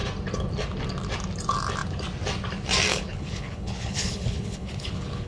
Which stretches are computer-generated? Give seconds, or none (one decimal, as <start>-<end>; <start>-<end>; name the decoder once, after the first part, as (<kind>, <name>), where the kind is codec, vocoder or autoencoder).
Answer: 2.9-5.3 (codec, HILCodec)